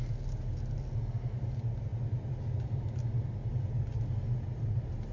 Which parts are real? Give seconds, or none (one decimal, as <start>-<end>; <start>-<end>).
0.0-5.1

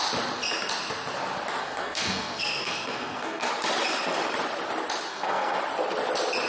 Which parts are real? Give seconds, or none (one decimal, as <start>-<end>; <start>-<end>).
0.0-1.6; 3.5-5.1; 5.6-6.5

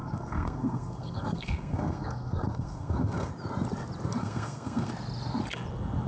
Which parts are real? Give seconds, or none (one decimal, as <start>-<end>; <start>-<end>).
3.3-4.2; 4.9-6.1

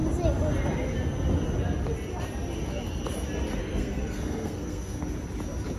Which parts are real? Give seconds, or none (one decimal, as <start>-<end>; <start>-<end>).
0.0-3.6; 5.0-5.8

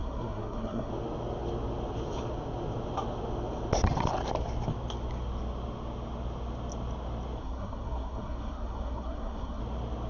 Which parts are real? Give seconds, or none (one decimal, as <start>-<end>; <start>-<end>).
0.9-7.4; 9.6-10.1

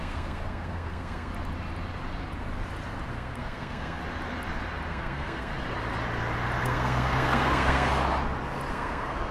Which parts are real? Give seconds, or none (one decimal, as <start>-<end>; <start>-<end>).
1.3-3.1; 4.0-4.9; 5.5-6.6; 7.9-8.7

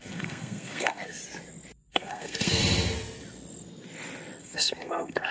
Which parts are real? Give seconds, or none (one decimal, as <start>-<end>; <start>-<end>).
1.2-1.9; 2.6-4.4

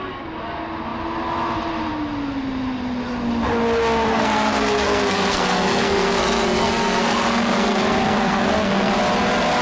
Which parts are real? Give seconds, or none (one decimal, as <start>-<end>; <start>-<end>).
0.0-4.1; 8.9-9.6